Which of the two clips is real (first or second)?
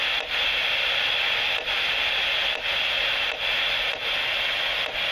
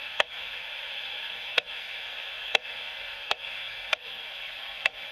first